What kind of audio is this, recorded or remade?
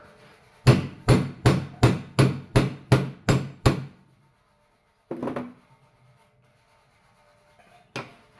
recorded